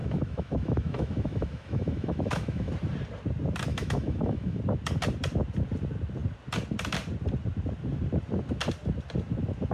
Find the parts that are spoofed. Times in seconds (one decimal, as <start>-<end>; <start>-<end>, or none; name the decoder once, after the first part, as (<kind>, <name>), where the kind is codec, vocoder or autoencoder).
0.0-2.7 (autoencoder, DAC-VAE); 3.7-4.6